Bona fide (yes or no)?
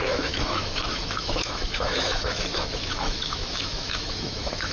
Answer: no